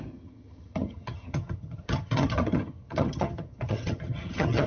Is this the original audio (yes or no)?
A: no